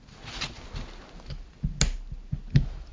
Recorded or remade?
recorded